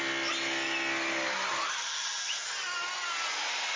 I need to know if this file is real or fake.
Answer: real